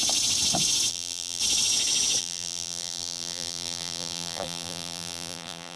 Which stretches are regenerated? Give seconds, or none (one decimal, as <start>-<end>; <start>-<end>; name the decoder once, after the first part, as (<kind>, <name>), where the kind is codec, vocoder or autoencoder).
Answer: 0.9-1.4 (vocoder, BigVGAN v2); 2.2-5.8